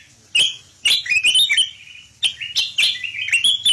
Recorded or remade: recorded